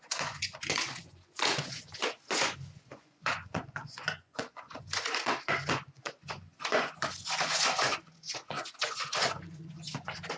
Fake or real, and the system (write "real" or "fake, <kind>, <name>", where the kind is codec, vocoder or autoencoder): fake, vocoder, Vocos